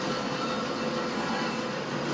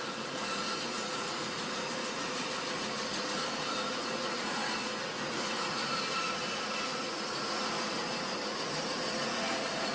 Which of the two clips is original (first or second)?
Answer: first